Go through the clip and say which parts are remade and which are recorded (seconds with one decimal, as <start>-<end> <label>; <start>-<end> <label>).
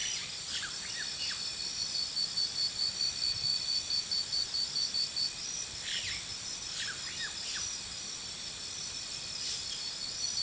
0.0-0.5 remade; 0.5-3.5 recorded; 3.5-4.9 remade; 4.9-10.4 recorded